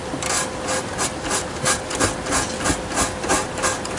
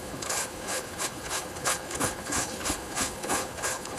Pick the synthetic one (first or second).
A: second